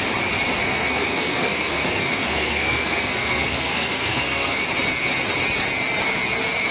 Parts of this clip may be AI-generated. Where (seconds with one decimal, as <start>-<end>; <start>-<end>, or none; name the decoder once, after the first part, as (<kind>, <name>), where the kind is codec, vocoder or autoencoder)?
0.6-4.6 (codec, SNAC)